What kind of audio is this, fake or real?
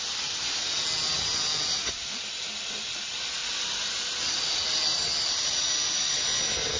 real